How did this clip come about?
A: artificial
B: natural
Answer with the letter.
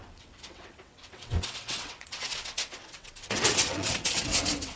A